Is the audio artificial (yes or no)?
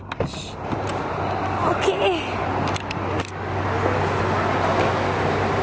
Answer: no